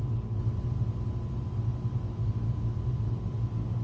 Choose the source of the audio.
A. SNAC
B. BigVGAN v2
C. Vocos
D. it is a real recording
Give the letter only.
D